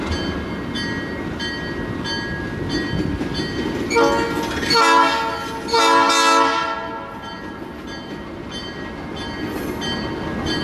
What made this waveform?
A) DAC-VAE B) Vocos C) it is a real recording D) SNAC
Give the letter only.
C